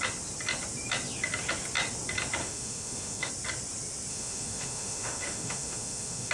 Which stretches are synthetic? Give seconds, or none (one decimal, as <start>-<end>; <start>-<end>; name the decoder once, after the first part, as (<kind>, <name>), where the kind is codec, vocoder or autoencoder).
2.4-3.3 (autoencoder, DAC-VAE); 4.1-6.3